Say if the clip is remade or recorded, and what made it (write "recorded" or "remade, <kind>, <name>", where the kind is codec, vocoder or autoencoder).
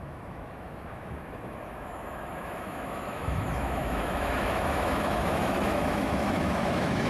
remade, autoencoder, DAC-VAE